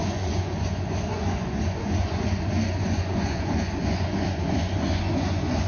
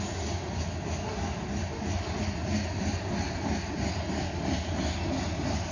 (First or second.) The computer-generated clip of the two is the first